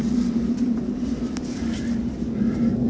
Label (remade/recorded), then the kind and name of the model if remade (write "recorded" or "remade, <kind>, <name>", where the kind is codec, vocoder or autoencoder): recorded